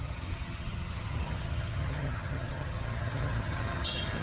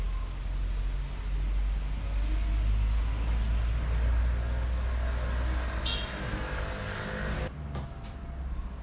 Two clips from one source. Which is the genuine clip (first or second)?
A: second